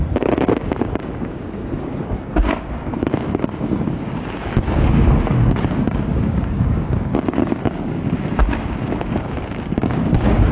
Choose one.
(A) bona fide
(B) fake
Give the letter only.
B